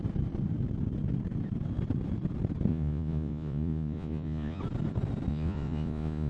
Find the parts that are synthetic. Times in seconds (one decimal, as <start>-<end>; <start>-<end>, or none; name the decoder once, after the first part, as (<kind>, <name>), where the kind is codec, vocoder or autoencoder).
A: 2.7-4.6 (vocoder, Vocos); 5.3-6.3